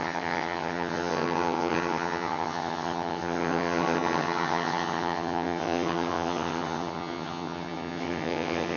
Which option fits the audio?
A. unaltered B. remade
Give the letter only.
B